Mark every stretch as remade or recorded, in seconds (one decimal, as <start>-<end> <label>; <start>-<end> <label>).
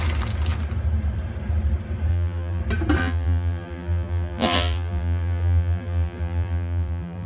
0.0-2.1 recorded; 2.1-2.6 remade; 2.6-3.0 recorded; 3.0-7.3 remade